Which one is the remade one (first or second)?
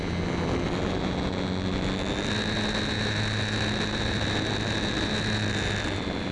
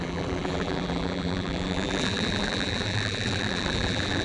second